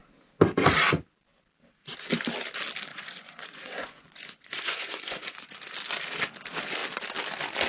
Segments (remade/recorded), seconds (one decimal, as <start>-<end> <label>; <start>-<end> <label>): 0.0-2.9 recorded; 2.9-5.5 remade; 5.5-7.7 recorded